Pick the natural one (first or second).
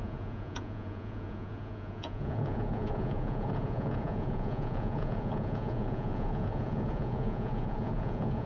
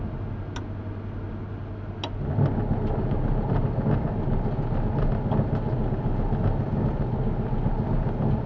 second